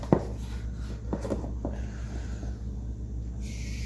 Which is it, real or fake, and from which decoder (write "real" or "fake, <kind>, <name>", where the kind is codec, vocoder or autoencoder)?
real